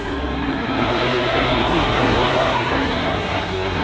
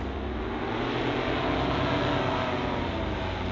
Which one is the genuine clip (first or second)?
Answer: second